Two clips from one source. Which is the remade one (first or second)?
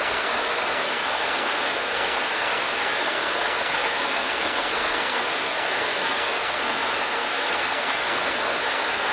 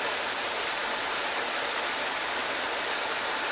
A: first